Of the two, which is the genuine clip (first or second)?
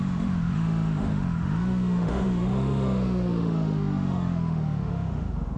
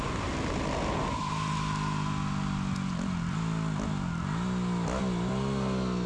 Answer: second